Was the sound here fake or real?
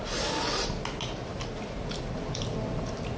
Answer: real